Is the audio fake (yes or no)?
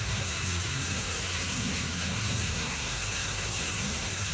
yes